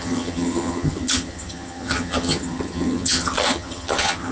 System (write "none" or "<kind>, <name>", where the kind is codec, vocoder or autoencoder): vocoder, HiFi-GAN